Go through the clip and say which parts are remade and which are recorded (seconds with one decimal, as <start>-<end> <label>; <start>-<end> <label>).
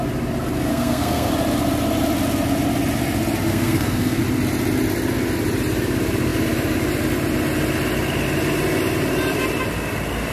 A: 0.0-0.7 recorded; 0.7-1.3 remade; 1.3-3.5 recorded; 3.5-4.2 remade; 4.2-10.3 recorded